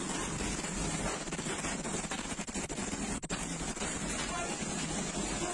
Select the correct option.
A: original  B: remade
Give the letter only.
A